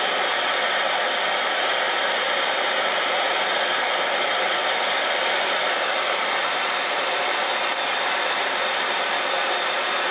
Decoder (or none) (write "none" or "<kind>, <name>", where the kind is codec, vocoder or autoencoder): vocoder, BigVGAN v2